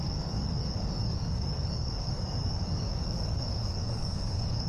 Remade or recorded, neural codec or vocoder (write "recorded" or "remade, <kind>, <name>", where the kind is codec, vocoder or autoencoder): remade, codec, DAC